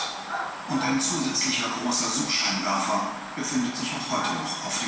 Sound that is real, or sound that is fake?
real